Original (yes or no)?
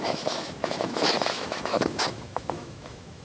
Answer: no